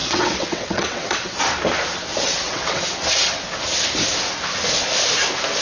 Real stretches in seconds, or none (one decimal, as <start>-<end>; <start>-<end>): 1.4-2.1; 2.8-5.6